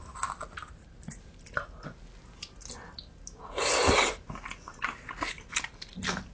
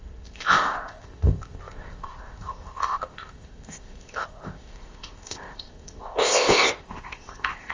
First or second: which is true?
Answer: first